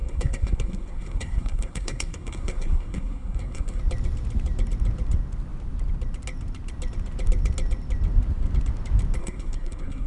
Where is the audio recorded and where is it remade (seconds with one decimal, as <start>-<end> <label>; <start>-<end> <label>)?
0.0-3.8 remade; 3.8-9.2 recorded; 9.2-10.1 remade